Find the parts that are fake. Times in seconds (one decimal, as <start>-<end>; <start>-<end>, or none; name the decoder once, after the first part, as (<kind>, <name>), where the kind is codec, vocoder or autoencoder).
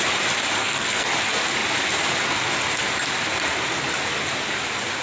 0.6-1.1 (codec, SNAC)